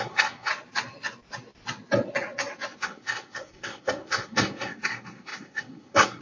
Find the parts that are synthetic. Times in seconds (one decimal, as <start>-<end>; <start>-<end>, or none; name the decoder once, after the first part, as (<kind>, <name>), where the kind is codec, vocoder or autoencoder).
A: 0.0-0.5 (codec, SNAC); 2.8-6.2